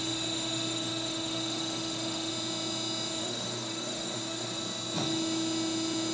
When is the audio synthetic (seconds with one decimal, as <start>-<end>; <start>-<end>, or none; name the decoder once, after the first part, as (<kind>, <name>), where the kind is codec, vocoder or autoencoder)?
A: 0.0-2.3 (autoencoder, DAC-VAE); 3.2-4.6